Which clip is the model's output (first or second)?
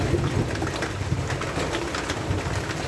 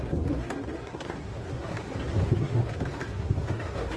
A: second